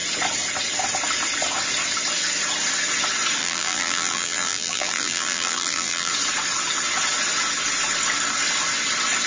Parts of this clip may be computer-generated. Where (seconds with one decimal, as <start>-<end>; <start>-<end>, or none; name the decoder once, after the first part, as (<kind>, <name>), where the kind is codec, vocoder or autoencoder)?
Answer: 3.4-6.1 (vocoder, BigVGAN v2)